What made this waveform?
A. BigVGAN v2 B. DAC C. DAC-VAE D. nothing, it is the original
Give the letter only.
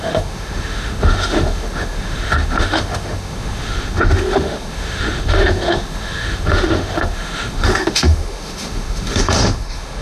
C